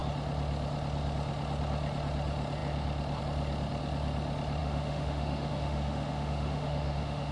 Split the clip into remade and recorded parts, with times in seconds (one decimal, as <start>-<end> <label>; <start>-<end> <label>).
0.0-4.6 recorded; 4.6-7.3 remade